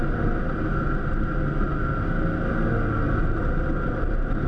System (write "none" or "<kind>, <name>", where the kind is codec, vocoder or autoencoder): none